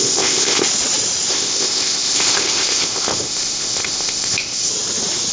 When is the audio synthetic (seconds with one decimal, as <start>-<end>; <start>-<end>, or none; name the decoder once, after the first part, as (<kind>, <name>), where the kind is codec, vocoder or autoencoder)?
0.0-0.6 (codec, ZipCodec); 1.3-4.7